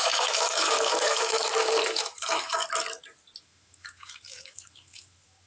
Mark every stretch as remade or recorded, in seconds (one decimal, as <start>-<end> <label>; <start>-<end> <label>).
0.0-2.6 remade; 2.6-3.4 recorded; 3.4-5.5 remade